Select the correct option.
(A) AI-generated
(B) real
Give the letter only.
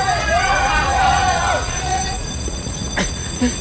A